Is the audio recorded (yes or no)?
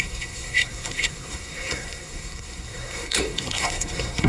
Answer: no